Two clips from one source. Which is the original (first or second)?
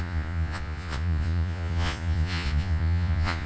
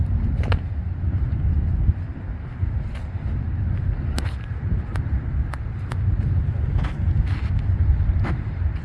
second